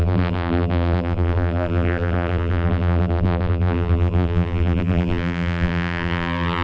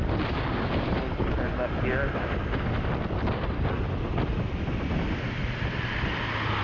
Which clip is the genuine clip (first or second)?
second